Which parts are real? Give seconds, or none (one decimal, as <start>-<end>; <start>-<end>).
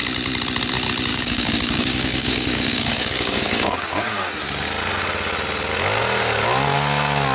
0.0-1.1; 4.3-7.3